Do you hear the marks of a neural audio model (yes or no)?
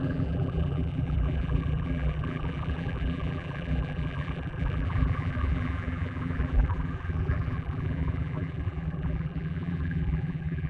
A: yes